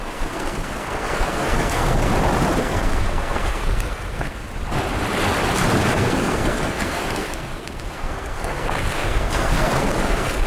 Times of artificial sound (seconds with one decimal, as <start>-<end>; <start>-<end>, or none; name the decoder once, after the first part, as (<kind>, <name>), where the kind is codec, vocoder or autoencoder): 0.0-2.1 (codec, SNAC); 2.6-4.5; 5.8-10.5